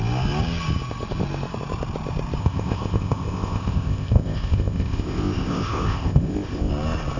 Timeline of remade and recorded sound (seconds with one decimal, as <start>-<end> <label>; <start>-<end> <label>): 0.0-2.4 recorded; 2.4-6.7 remade; 6.7-7.2 recorded